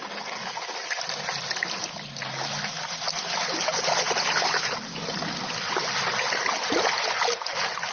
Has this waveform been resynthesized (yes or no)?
no